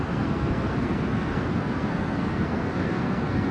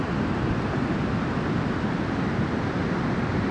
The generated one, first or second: first